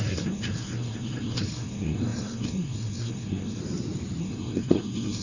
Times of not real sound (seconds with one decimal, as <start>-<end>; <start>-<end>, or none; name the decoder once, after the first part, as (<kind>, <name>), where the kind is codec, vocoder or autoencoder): 0.0-3.6 (codec, SNAC); 4.2-5.2